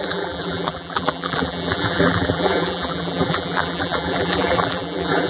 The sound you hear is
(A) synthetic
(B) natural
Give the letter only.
A